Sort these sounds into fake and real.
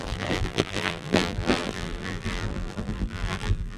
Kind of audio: fake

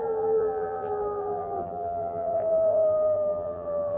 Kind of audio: fake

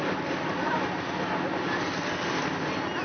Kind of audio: real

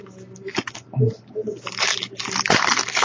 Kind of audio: real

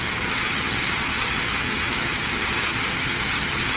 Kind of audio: fake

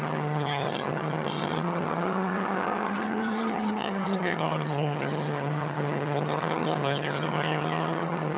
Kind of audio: fake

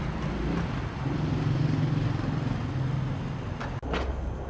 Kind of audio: real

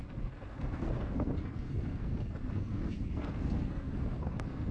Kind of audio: fake